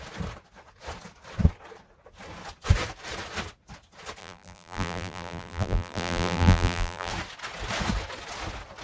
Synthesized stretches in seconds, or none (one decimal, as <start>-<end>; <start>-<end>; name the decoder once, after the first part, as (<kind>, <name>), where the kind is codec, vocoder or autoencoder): 4.2-7.1 (vocoder, BigVGAN v2)